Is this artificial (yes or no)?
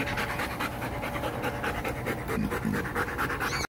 no